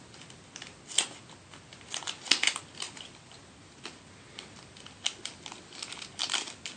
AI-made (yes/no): no